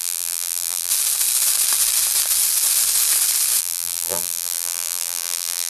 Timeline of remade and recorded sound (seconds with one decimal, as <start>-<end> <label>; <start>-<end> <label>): 0.0-0.9 remade; 0.9-3.6 recorded; 3.6-5.7 remade